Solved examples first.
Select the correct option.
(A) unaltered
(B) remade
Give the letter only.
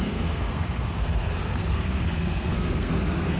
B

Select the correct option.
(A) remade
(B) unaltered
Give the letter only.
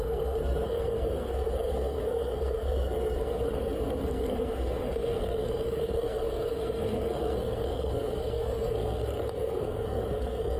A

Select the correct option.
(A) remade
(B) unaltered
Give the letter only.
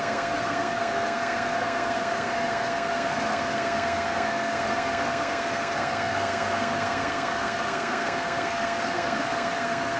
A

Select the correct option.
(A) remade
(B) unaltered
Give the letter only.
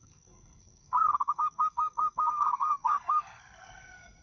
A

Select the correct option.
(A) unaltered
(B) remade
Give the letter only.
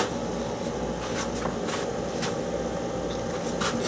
A